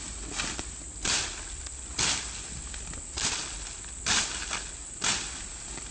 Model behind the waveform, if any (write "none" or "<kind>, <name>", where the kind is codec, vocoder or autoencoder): none